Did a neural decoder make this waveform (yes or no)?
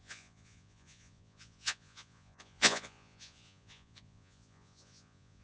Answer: yes